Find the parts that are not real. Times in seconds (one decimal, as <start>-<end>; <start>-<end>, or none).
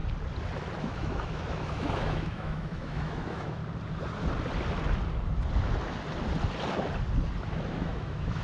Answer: 0.8-3.6; 7.4-8.4